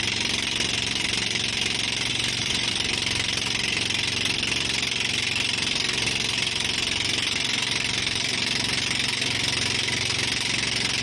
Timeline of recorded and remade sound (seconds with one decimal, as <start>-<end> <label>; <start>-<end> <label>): 0.0-2.1 recorded; 2.1-2.7 remade; 2.7-11.0 recorded